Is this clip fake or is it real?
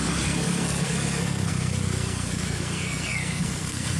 fake